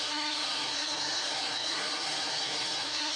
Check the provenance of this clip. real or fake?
fake